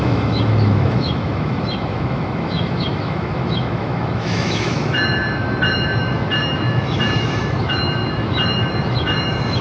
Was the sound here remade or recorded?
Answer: remade